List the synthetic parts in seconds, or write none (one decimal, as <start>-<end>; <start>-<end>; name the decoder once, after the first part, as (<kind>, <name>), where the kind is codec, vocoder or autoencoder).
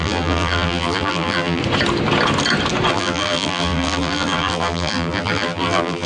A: 0.0-1.6 (vocoder, BigVGAN v2); 2.9-6.1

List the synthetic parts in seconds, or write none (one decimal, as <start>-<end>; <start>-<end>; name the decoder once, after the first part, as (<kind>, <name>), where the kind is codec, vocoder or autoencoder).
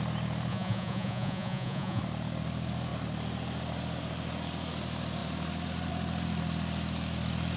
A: 0.5-2.0 (vocoder, Vocos)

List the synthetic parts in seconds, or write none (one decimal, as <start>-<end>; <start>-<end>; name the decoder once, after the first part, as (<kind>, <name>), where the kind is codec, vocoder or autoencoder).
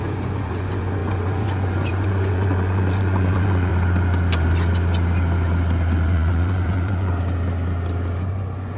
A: 0.0-3.7 (vocoder, Vocos); 6.1-7.1; 8.3-8.8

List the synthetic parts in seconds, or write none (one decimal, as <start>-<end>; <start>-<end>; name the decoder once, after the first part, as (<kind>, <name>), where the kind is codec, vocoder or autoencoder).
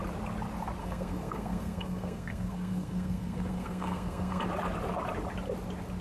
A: 0.8-4.4 (codec, SNAC)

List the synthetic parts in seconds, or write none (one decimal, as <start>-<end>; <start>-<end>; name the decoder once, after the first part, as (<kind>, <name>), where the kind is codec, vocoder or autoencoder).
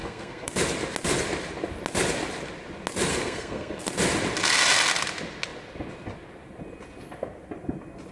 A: 0.0-0.5 (codec, SNAC); 3.1-3.8